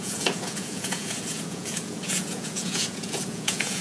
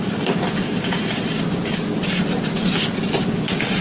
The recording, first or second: second